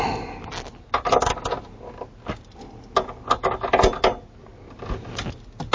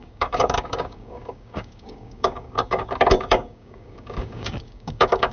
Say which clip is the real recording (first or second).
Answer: first